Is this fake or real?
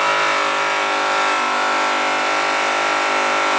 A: real